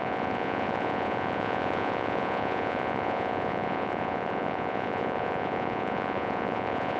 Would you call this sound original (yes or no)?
no